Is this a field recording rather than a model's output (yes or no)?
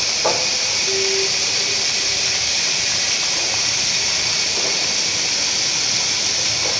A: yes